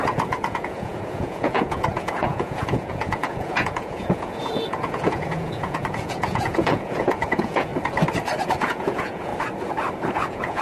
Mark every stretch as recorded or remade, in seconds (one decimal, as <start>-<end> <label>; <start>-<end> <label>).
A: 0.0-7.7 remade; 7.7-8.4 recorded; 8.4-9.3 remade; 9.3-10.1 recorded; 10.1-10.6 remade